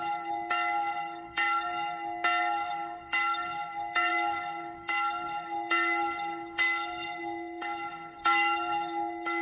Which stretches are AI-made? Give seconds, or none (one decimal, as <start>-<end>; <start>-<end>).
0.0-1.7; 2.4-9.4